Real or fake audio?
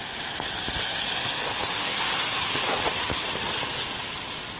real